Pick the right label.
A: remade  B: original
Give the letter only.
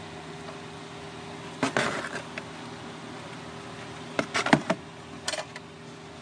B